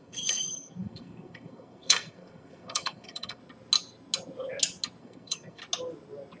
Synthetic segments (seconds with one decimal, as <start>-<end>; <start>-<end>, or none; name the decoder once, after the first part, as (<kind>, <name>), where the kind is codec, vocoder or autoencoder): 0.0-3.4 (codec, SNAC); 5.0-5.6